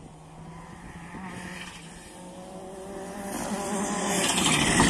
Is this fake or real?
real